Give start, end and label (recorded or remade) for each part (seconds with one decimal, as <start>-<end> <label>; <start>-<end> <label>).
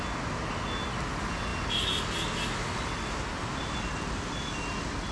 0.0-5.1 recorded